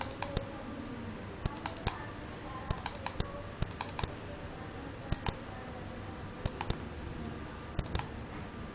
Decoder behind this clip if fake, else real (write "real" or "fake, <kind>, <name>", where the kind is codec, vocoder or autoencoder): real